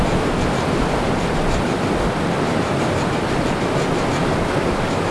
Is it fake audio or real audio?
real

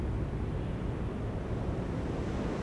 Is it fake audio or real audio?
real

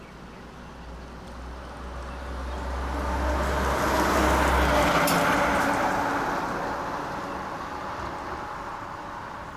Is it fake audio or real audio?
real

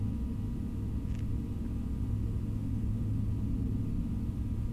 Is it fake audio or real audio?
real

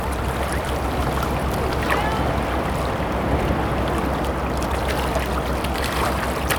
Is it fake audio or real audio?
real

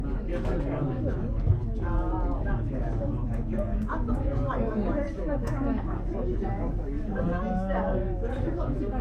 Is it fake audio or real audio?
fake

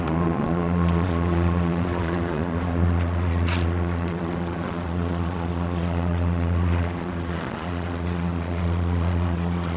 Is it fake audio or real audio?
fake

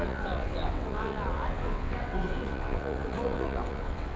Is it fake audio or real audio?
fake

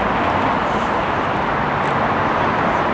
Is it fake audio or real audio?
real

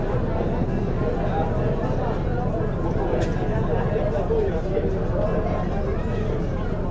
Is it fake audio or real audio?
real